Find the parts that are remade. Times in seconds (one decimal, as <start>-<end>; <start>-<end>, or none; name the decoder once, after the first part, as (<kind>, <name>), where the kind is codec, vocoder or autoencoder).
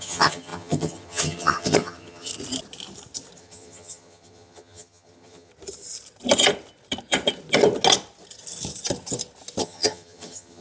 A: 0.0-2.3 (vocoder, HiFi-GAN); 3.4-5.5; 9.6-10.6